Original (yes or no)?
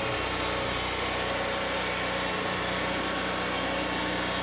yes